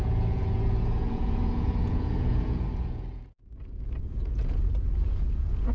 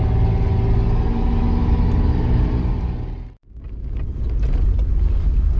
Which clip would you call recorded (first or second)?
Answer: second